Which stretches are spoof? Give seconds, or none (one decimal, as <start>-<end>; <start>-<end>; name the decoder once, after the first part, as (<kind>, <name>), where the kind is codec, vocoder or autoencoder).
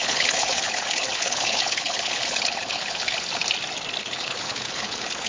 0.0-3.4 (codec, HILCodec); 4.0-5.3